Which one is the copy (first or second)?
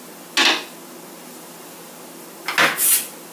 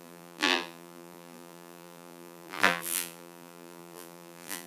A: second